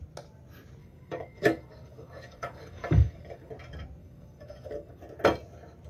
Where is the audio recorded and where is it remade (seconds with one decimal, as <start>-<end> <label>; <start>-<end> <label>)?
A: 0.0-0.8 recorded; 0.8-3.5 remade; 3.5-4.0 recorded; 4.0-5.0 remade; 5.0-5.9 recorded